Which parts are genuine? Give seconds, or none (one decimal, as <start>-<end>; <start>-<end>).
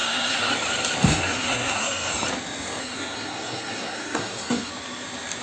0.5-1.1; 2.1-2.8; 4.7-5.4